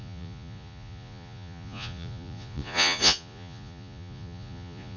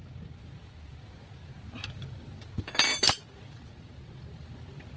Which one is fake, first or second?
first